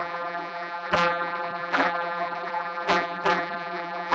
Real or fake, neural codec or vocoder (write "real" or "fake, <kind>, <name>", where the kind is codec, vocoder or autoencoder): fake, vocoder, BigVGAN v2